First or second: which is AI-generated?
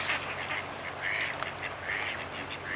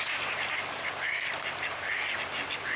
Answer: second